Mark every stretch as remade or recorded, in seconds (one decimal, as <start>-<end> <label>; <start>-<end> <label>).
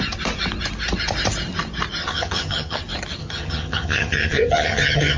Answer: 0.0-2.0 recorded; 2.0-2.8 remade; 2.8-3.2 recorded; 3.2-5.2 remade